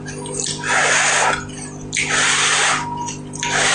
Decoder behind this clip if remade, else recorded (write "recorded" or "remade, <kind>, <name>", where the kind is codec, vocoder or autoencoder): recorded